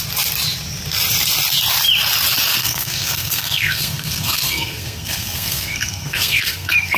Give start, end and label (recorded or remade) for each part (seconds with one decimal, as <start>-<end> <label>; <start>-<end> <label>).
0.0-2.6 recorded; 2.6-7.0 remade